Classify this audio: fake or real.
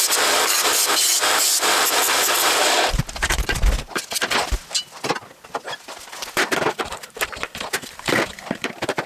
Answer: fake